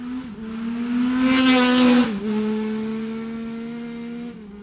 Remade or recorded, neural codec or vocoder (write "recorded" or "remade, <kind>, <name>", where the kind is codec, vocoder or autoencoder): recorded